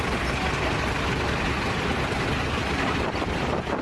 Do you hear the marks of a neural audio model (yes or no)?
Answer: yes